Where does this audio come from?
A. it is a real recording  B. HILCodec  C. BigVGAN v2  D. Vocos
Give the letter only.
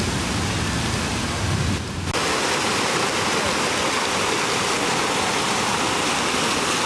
A